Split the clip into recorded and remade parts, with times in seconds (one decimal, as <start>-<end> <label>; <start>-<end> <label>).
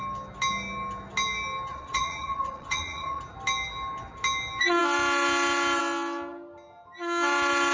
0.0-1.7 recorded; 1.7-3.2 remade; 3.2-7.7 recorded